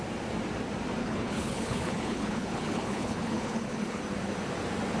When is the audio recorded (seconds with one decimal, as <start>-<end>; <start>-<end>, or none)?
0.0-1.0; 4.0-5.0